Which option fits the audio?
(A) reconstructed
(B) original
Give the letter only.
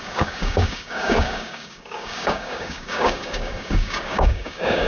A